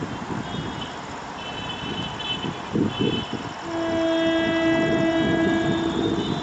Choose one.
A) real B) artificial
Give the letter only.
A